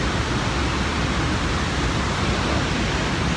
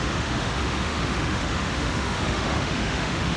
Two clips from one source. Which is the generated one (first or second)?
second